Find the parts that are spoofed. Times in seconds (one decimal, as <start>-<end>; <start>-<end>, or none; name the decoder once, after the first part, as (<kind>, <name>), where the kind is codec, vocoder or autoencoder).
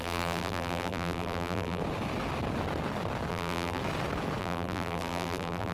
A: 0.0-1.8 (vocoder, BigVGAN v2); 3.3-3.8; 4.4-5.7